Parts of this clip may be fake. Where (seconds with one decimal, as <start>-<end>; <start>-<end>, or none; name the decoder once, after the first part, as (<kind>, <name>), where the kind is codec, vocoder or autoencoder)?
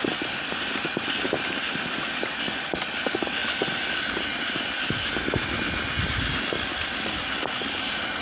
none